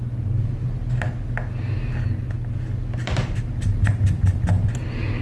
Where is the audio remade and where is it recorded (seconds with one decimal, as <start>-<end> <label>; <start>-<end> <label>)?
0.0-4.3 remade; 4.3-5.2 recorded